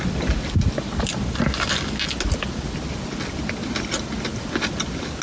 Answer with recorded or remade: recorded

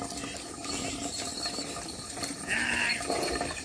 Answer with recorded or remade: recorded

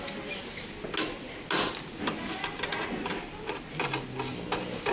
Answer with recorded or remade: recorded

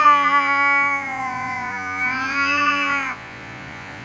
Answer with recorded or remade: remade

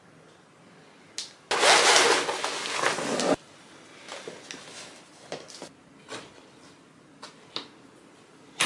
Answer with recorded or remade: recorded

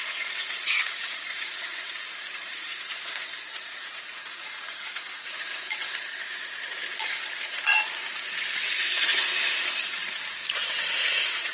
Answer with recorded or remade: remade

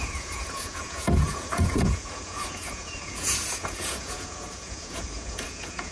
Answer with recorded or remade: remade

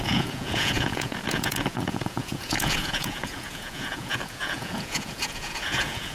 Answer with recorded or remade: remade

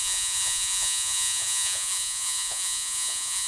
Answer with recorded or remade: remade